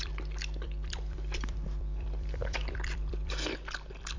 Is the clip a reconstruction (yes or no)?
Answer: yes